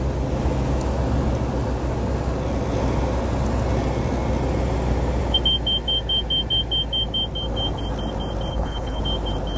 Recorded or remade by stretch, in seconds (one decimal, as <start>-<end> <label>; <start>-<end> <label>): 0.0-8.5 recorded; 8.5-9.0 remade; 9.0-9.6 recorded